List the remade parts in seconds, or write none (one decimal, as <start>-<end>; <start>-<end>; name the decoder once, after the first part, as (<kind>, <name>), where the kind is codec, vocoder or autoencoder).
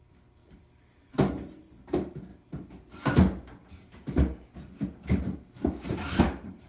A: 0.0-2.3 (vocoder, BigVGAN v2); 6.2-6.7